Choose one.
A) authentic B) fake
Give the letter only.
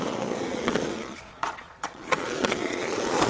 B